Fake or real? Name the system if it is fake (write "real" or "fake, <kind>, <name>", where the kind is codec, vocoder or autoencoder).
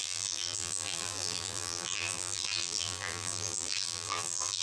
fake, vocoder, BigVGAN v2